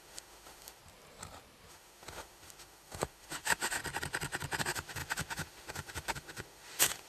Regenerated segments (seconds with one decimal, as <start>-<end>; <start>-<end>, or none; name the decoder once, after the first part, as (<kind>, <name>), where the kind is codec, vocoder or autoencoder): 0.0-0.8 (autoencoder, DAC-VAE); 1.7-3.8; 4.6-7.1